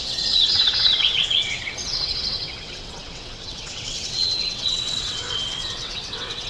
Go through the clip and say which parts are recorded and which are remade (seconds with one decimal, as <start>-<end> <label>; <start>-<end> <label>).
0.0-6.5 remade